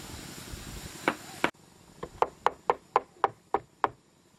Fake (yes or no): no